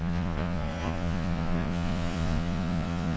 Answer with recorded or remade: remade